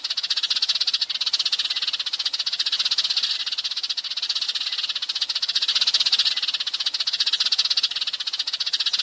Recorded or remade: recorded